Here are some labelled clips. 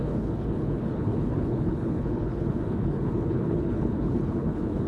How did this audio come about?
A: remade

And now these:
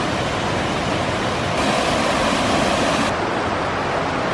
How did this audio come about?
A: recorded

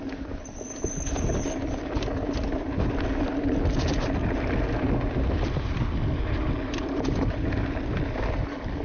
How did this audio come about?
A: recorded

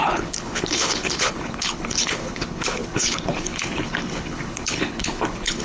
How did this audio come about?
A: remade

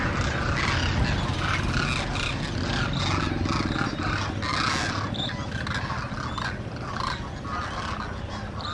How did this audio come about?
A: recorded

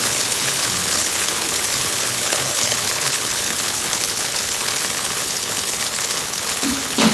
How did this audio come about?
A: remade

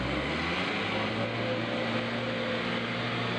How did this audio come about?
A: recorded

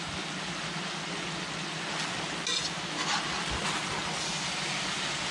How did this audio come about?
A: recorded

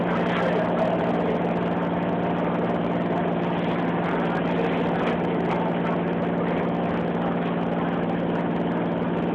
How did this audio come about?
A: recorded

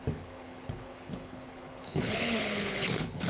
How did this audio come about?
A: remade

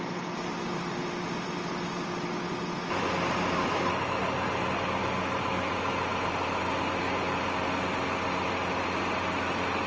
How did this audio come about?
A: recorded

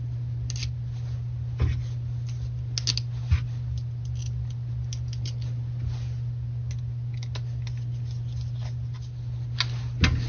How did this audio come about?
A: recorded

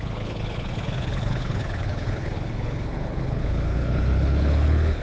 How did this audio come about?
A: remade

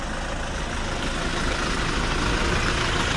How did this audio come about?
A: recorded